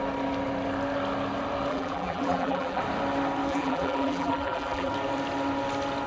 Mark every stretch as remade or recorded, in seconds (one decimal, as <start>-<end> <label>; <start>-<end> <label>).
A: 0.0-1.7 recorded; 1.7-2.8 remade; 2.8-3.5 recorded; 3.5-4.9 remade; 4.9-6.1 recorded